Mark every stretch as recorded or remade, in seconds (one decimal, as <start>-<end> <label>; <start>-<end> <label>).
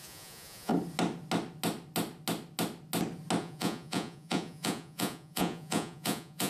0.0-0.7 remade; 0.7-3.4 recorded; 3.4-6.5 remade